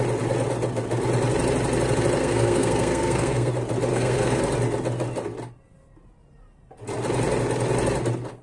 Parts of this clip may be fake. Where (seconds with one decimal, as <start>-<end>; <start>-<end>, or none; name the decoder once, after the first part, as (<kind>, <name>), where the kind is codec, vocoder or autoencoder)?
2.2-3.5 (codec, SNAC); 3.9-4.4